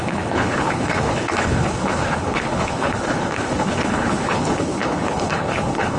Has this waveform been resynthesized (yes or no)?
yes